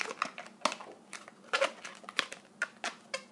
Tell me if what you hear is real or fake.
real